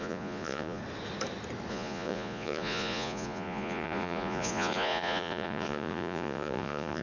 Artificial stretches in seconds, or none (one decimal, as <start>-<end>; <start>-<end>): 0.0-0.8; 1.7-7.0